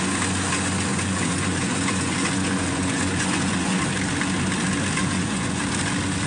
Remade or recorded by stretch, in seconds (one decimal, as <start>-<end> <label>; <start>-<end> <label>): 0.0-0.9 recorded; 0.9-3.8 remade; 3.8-5.0 recorded; 5.0-5.6 remade; 5.6-6.3 recorded